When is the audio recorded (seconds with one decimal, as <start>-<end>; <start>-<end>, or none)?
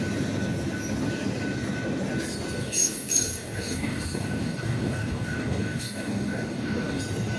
0.0-2.6; 7.0-7.4